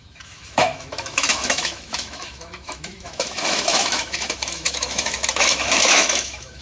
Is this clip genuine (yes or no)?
no